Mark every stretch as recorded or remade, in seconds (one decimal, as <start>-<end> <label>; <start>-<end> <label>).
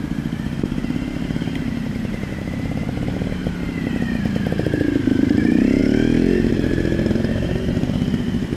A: 0.0-3.4 remade; 3.4-4.5 recorded; 4.5-5.8 remade; 5.8-6.5 recorded; 6.5-8.6 remade